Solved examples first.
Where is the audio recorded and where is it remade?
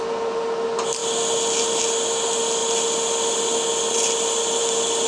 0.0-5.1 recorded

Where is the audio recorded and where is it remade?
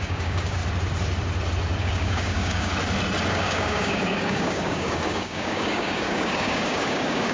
0.0-0.6 remade; 0.6-1.8 recorded; 1.8-2.7 remade; 2.7-3.3 recorded; 3.3-7.3 remade